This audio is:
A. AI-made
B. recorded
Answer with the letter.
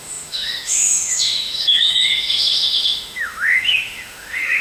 A